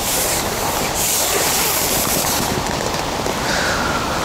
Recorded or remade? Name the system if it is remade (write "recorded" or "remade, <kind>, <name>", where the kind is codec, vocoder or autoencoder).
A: remade, vocoder, BigVGAN v2